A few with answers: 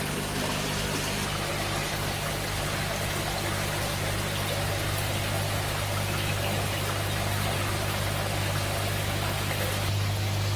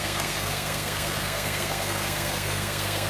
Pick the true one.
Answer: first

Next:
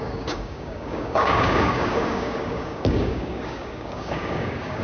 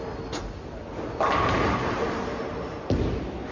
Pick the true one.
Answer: second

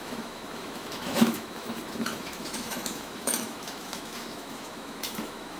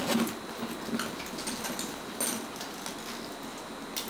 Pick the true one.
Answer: second